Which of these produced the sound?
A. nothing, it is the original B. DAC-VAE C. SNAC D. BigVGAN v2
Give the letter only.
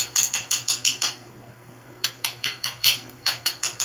C